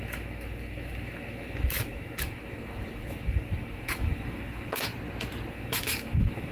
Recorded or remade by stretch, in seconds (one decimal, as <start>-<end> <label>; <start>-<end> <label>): 0.0-4.9 remade; 4.9-5.5 recorded; 5.5-6.5 remade